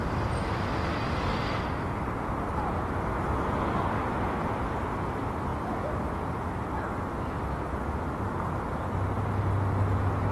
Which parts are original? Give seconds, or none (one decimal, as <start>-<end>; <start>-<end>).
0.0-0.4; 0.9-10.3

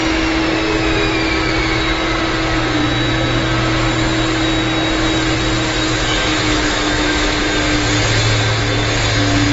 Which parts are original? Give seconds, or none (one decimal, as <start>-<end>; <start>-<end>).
0.0-5.9; 7.4-9.5

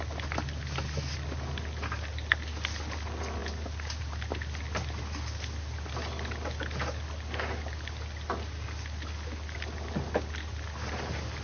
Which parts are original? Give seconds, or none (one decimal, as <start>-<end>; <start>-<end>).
0.0-11.4

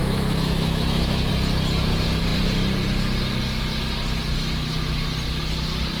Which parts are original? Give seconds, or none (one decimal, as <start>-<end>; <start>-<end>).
1.3-6.0